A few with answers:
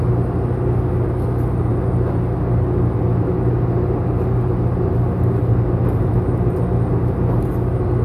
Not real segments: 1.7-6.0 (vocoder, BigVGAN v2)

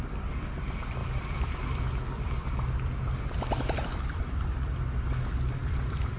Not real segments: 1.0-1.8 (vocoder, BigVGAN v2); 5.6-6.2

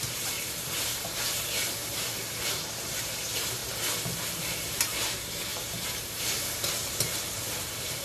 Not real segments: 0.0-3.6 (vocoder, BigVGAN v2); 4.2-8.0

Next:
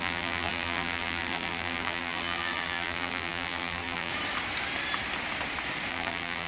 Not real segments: 0.0-4.1 (vocoder, BigVGAN v2); 5.9-6.5

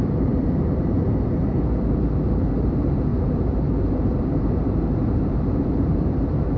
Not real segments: 0.0-6.6 (vocoder, BigVGAN v2)

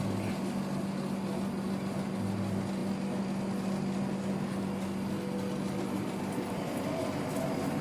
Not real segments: none

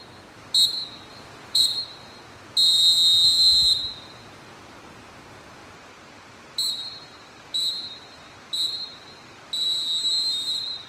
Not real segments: 1.1-1.8 (vocoder, BigVGAN v2)

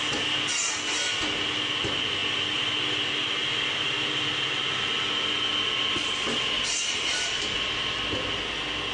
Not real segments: 7.1-8.0 (vocoder, BigVGAN v2)